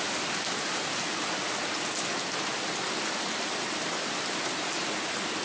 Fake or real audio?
real